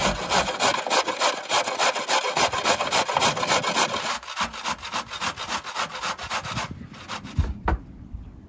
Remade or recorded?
recorded